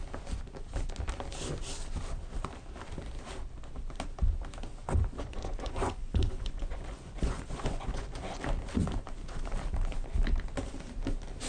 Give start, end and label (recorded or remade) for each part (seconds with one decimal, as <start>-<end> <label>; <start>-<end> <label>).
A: 0.0-4.7 recorded; 4.7-8.4 remade; 8.4-11.5 recorded